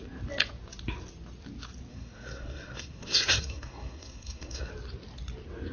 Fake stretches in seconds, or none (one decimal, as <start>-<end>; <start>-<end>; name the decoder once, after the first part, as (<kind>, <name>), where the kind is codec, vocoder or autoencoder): 1.9-4.7 (codec, SNAC)